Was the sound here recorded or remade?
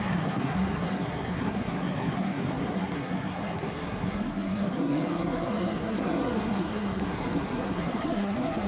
remade